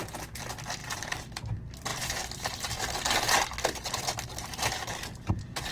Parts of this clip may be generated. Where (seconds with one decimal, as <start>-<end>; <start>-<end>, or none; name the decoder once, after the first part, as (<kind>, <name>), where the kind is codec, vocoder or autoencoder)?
0.8-1.5 (vocoder, BigVGAN v2); 1.9-5.3